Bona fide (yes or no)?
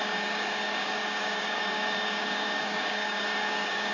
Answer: no